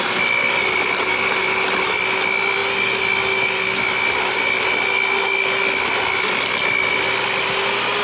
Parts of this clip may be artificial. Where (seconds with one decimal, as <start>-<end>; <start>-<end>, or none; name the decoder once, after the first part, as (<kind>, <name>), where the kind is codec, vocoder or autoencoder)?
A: none